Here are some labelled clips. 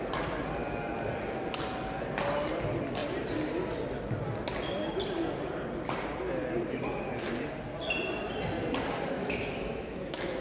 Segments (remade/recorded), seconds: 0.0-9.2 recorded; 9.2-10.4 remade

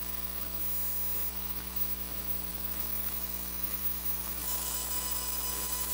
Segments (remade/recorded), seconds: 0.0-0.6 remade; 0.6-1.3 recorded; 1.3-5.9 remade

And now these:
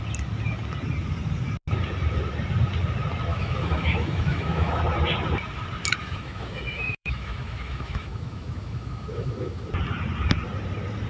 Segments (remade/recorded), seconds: 0.0-3.3 recorded; 3.3-4.8 remade; 4.8-6.0 recorded; 6.0-9.7 remade; 9.7-11.1 recorded